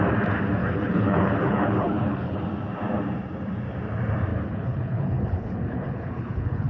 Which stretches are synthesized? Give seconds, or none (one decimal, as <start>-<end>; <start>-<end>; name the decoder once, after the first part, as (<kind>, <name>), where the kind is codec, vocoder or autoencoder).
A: 0.6-2.4 (codec, HILCodec); 4.3-6.7